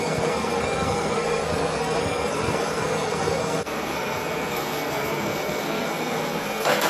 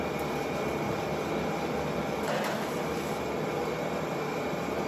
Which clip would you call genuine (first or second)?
second